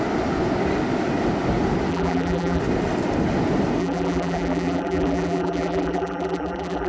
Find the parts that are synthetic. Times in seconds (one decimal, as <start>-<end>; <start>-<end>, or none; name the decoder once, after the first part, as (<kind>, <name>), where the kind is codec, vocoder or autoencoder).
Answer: 1.9-2.6 (vocoder, BigVGAN v2); 3.8-6.9